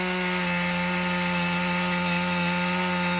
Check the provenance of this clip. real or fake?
real